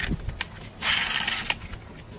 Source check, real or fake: real